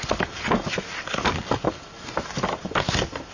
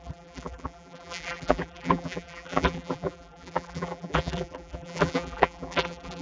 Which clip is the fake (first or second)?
second